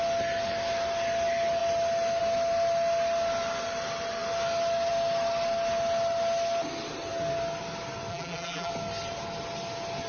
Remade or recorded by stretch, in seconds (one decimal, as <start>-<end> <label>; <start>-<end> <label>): 0.0-8.1 recorded; 8.1-8.7 remade; 8.7-10.1 recorded